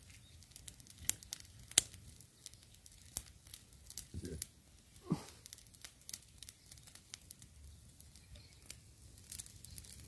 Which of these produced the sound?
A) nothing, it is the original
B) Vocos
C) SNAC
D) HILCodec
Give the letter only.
A